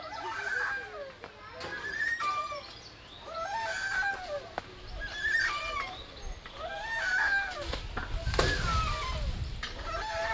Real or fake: real